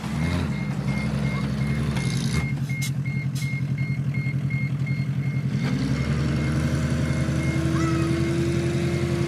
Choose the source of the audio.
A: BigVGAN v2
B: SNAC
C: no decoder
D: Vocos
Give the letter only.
C